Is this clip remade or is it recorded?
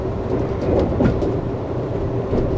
remade